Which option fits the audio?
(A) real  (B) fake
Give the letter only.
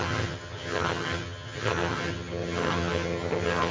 B